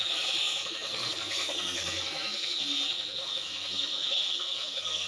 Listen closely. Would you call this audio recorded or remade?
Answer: remade